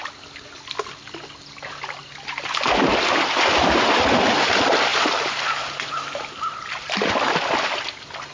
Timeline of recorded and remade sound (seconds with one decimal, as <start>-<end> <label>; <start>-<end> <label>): 0.0-8.3 recorded